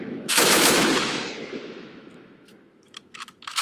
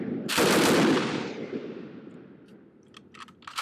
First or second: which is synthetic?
first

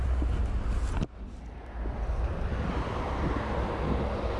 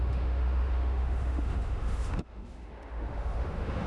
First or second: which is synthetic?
second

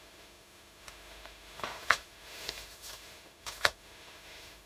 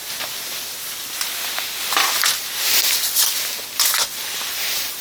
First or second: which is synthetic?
first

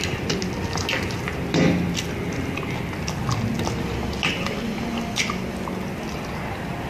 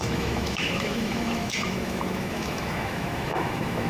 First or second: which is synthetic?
second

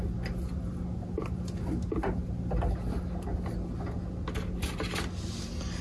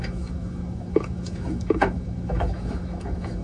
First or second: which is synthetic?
second